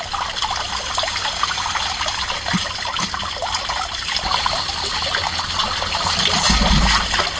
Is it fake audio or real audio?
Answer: real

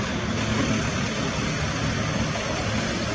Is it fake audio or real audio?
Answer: real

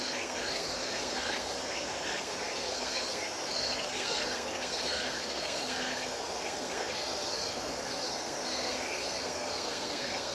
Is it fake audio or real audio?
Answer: fake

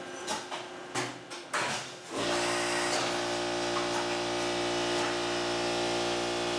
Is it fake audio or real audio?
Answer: real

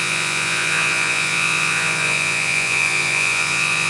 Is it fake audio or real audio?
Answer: fake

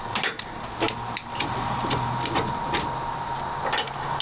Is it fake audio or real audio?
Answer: real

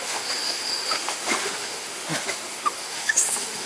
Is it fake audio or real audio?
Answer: fake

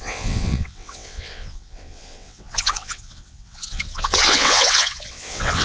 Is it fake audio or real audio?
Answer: fake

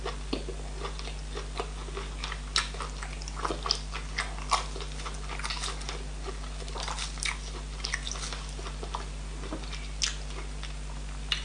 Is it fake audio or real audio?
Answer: real